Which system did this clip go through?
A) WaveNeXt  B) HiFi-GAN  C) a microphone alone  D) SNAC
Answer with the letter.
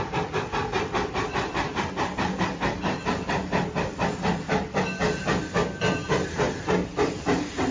C